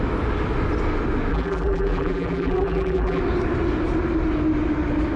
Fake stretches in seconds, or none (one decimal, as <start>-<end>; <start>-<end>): 1.3-3.2